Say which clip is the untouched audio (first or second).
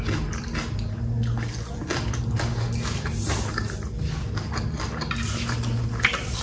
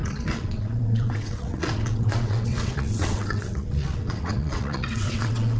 first